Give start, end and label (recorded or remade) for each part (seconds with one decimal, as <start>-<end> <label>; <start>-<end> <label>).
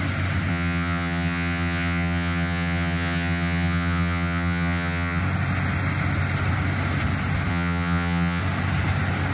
0.0-0.5 recorded; 0.5-5.2 remade; 5.2-7.5 recorded; 7.5-8.4 remade; 8.4-9.3 recorded